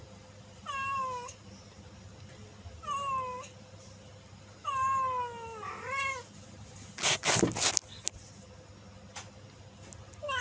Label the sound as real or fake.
real